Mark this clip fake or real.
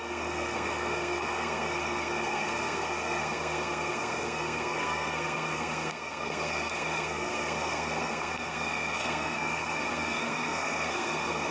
fake